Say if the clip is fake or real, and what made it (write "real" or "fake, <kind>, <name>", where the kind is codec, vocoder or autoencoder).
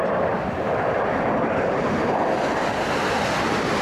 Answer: real